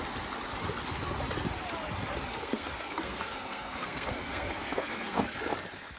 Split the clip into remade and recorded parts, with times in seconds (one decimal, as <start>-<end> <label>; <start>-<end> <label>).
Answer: 0.0-2.3 recorded; 2.3-6.0 remade